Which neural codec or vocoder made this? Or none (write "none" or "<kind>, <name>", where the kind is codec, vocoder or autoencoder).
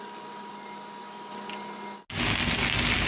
none